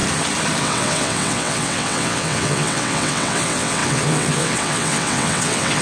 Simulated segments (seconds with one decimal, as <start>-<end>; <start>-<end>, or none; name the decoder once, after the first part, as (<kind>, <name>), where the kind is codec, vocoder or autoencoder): 0.6-5.8 (vocoder, WaveNeXt)